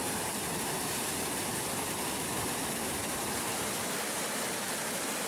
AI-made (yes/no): no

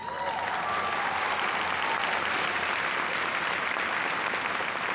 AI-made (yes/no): no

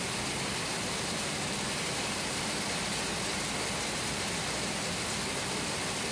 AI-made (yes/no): no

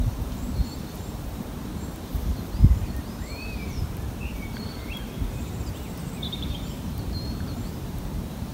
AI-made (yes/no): yes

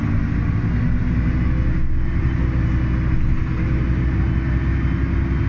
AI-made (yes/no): no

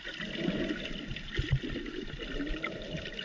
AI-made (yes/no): no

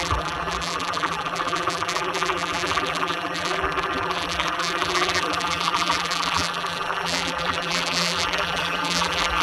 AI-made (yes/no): yes